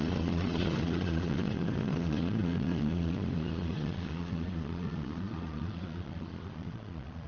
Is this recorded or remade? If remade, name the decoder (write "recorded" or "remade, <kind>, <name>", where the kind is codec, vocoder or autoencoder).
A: remade, vocoder, Vocos